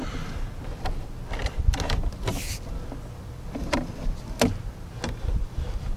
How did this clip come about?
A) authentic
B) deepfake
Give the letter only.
A